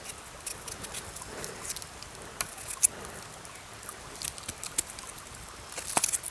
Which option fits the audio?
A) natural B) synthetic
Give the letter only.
A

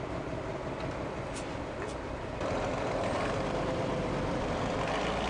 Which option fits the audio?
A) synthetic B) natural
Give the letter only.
A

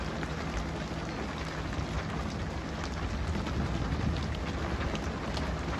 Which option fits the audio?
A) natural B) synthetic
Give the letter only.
A